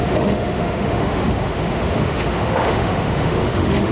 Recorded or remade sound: remade